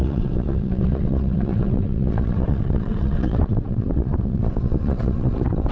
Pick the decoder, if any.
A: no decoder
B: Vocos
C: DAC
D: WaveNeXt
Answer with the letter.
D